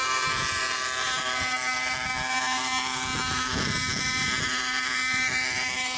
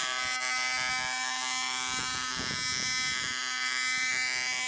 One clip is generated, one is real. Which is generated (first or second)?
first